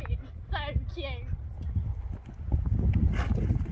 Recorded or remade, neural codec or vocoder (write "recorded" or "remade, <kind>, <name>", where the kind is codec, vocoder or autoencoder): recorded